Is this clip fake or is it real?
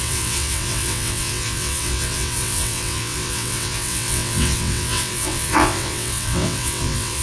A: fake